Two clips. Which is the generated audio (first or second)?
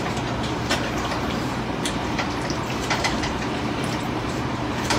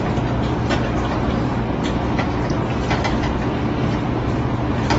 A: first